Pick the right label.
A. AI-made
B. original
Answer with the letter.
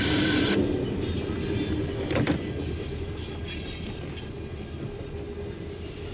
B